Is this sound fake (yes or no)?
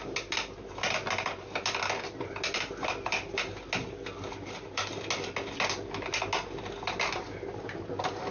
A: no